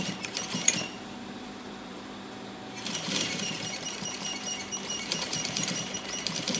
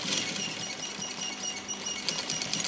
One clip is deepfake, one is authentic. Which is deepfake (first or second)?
first